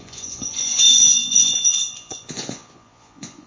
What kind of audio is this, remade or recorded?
remade